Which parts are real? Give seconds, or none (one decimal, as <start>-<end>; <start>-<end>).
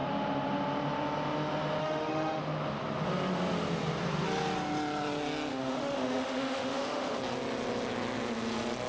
0.0-1.8; 2.4-5.5; 7.2-8.9